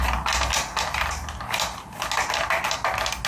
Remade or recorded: recorded